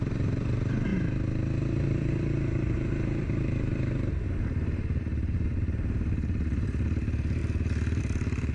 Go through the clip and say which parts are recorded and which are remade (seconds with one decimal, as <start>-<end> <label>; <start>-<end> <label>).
0.0-0.9 remade; 0.9-1.6 recorded; 1.6-7.4 remade; 7.4-8.0 recorded; 8.0-8.5 remade